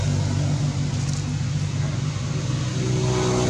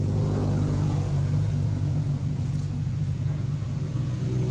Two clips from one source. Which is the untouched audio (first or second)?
first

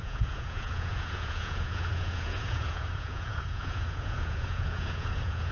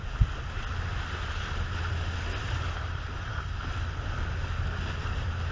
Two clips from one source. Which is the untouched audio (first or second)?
second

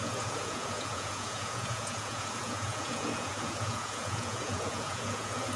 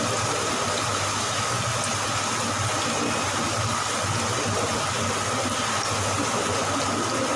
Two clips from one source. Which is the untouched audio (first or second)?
second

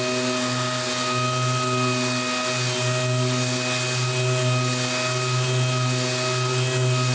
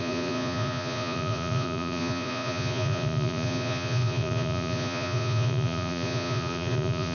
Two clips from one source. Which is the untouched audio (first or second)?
first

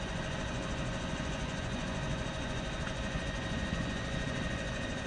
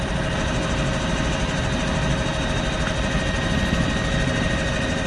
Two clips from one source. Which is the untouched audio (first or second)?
second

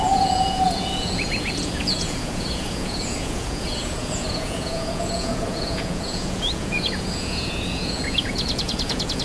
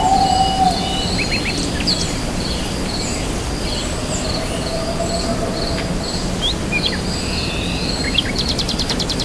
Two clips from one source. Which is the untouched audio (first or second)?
second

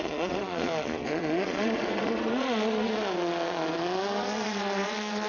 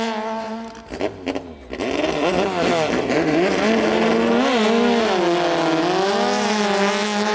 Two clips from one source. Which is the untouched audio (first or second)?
second